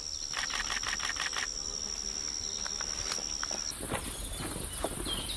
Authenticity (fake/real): real